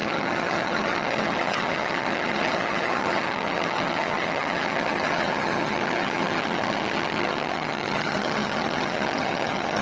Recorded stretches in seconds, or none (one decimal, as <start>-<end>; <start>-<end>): none